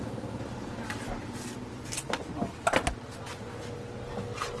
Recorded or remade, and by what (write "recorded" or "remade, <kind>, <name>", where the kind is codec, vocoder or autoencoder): recorded